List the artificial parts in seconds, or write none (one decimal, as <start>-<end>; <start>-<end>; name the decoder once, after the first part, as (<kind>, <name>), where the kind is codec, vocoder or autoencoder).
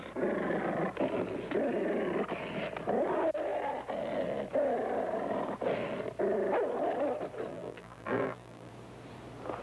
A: 7.5-8.7 (vocoder, BigVGAN v2)